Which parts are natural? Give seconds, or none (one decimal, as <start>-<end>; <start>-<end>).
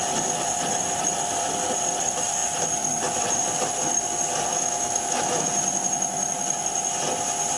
0.0-4.5; 5.5-7.6